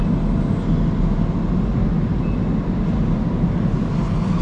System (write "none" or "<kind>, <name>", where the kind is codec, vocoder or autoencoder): none